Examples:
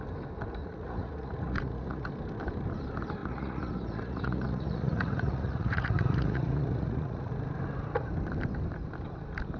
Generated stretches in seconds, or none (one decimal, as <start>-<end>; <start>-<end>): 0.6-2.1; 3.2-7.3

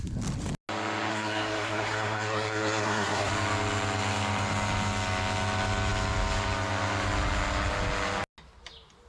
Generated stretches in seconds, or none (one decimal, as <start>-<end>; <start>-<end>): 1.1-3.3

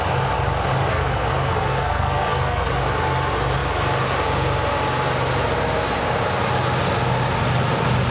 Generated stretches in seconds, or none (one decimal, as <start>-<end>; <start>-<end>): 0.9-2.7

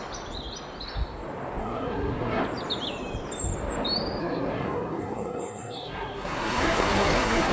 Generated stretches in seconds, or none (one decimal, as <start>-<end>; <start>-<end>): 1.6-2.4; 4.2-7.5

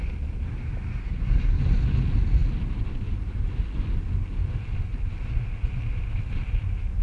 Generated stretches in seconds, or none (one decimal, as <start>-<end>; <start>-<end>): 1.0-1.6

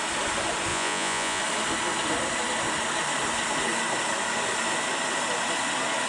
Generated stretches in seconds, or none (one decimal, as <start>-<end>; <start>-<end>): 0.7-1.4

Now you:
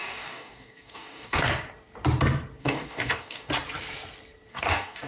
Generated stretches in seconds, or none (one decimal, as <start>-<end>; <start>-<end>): 0.0-1.5; 2.6-3.5; 4.5-5.1

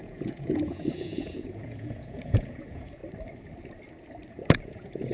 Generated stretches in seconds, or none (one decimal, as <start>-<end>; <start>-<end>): 0.0-3.0; 4.3-5.1